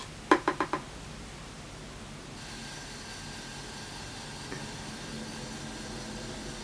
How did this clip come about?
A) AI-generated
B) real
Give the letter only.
B